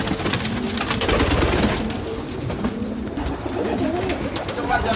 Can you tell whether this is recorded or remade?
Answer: recorded